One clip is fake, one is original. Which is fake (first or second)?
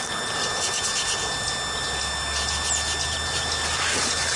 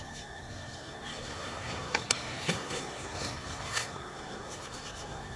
second